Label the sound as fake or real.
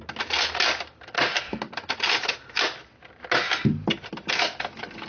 real